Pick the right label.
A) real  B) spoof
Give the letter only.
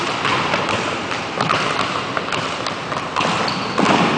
A